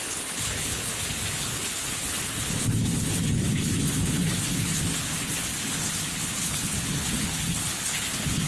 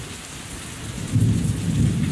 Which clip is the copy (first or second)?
first